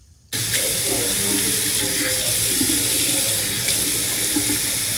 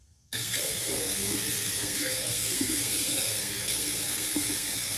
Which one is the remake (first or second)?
second